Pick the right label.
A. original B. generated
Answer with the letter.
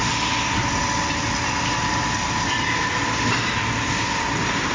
A